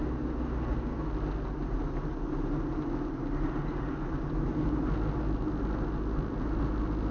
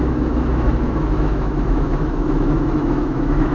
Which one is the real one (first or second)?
first